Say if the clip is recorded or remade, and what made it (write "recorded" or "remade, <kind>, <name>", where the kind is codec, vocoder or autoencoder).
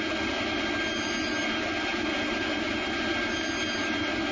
recorded